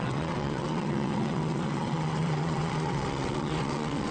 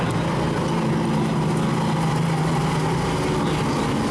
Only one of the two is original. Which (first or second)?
second